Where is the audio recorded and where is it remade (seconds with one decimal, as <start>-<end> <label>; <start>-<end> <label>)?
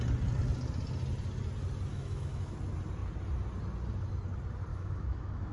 0.0-1.9 recorded; 1.9-2.5 remade; 2.5-4.7 recorded; 4.7-5.5 remade